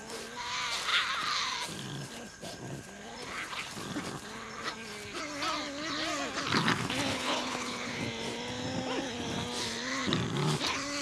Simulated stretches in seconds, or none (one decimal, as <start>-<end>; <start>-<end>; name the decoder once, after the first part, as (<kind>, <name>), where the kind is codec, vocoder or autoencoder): 7.1-8.0 (codec, HILCodec)